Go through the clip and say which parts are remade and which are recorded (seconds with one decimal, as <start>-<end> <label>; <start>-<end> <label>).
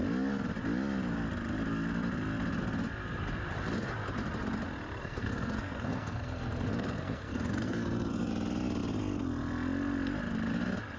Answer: 0.0-5.0 recorded; 5.0-8.3 remade; 8.3-11.0 recorded